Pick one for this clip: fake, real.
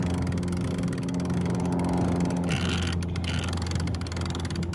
real